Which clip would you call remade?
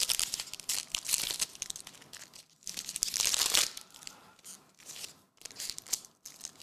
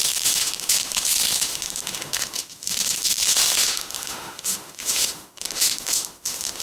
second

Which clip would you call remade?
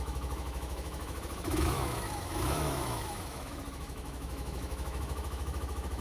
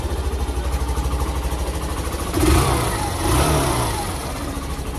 first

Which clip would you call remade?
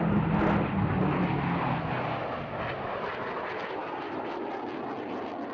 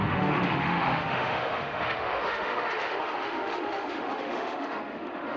second